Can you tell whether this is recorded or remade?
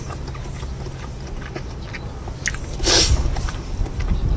recorded